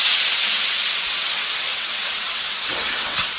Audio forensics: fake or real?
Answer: fake